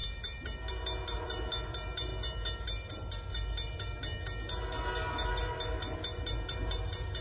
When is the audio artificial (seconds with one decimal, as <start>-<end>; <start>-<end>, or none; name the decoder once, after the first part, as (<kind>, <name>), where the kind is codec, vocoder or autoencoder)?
none

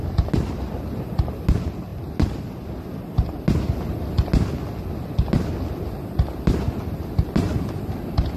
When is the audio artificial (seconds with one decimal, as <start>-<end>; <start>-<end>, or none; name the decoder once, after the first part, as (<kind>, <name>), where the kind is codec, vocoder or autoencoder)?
none

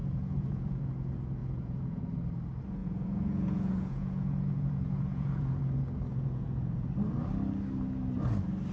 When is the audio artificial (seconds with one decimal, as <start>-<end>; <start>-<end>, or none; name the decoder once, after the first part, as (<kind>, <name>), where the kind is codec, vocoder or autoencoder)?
0.0-0.9 (vocoder, Vocos); 1.4-2.0; 2.8-5.6; 6.1-6.9

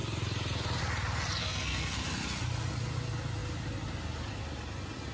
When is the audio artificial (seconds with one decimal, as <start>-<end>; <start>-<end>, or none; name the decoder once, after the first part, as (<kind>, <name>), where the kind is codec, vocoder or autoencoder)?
1.4-2.0 (codec, SNAC)

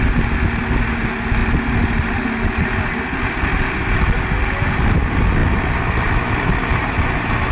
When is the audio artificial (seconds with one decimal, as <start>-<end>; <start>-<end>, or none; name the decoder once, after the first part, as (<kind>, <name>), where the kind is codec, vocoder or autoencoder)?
none